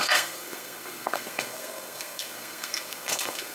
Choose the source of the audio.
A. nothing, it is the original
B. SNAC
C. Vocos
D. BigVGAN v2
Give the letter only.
B